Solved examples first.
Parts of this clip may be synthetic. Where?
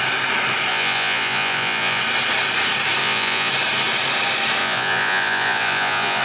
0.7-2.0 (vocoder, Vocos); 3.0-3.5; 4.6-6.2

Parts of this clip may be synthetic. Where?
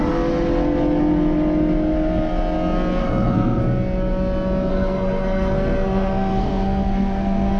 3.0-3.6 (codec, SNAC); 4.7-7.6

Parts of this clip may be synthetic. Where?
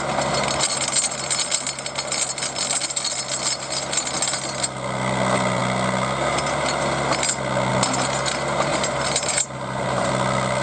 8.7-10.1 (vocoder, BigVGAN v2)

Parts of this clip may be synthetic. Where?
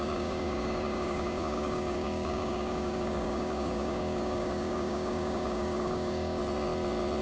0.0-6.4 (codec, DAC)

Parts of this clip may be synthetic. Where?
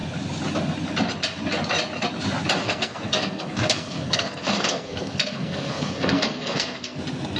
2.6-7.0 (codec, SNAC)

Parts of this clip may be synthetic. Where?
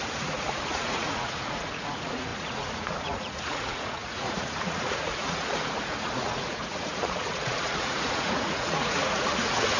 0.0-9.8 (vocoder, Vocos)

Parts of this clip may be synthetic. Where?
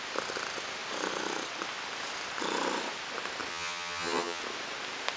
3.5-4.4 (vocoder, HiFi-GAN)